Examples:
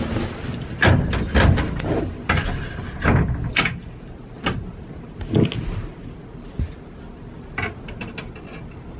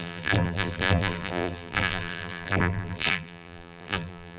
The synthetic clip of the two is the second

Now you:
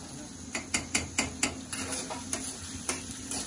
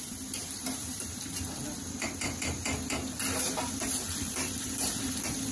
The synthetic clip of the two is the second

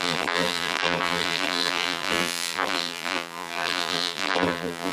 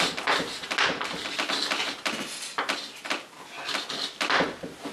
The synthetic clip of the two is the first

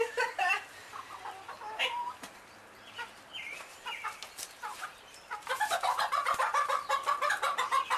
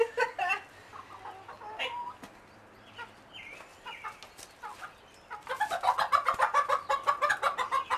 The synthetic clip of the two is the first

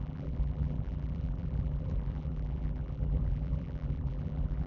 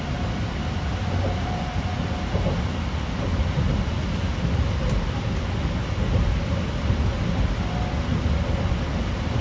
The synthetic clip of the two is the first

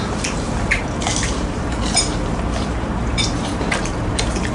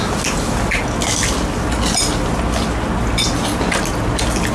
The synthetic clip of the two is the first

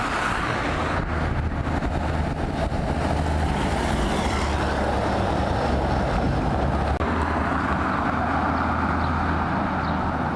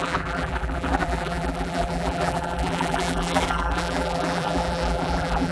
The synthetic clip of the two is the second